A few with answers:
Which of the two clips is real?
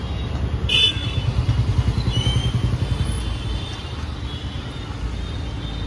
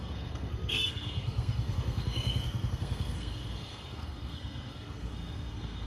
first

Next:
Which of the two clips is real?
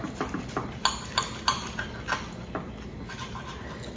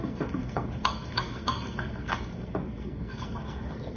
first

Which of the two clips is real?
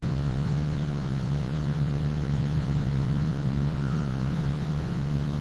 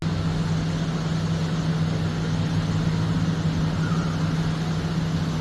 second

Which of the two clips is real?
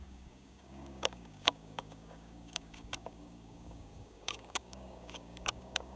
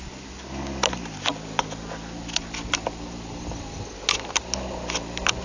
second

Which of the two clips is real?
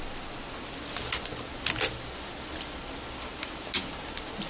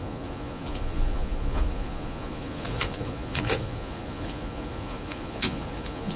first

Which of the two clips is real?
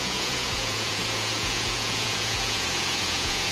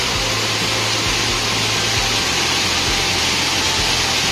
second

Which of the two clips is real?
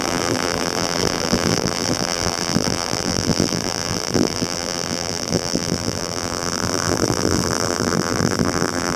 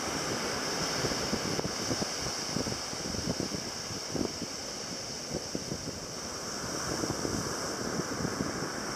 second